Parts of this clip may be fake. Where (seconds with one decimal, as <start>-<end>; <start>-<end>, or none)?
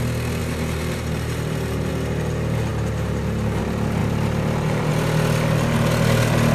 0.4-1.9; 2.7-3.6